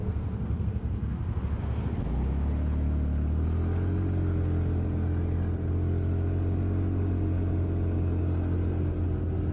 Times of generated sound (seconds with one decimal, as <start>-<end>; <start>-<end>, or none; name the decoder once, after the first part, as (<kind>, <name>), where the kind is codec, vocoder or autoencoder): 0.0-1.4 (codec, SNAC)